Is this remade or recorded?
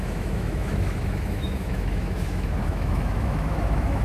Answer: remade